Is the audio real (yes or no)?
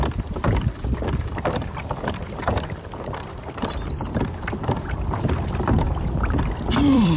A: no